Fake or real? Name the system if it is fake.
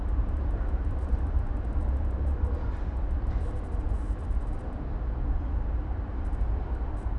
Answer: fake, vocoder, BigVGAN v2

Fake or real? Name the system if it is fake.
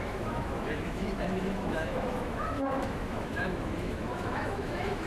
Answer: fake, autoencoder, DAC-VAE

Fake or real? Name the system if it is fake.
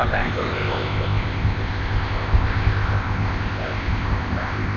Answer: fake, codec, ZipCodec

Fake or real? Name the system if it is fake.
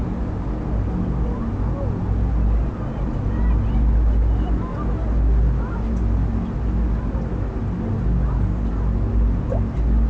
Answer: real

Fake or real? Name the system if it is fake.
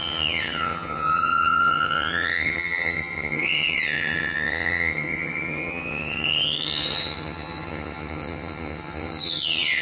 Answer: fake, vocoder, HiFi-GAN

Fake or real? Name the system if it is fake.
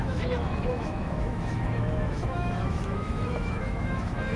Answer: fake, autoencoder, DAC-VAE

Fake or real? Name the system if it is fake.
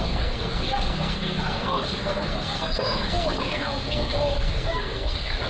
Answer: fake, codec, SNAC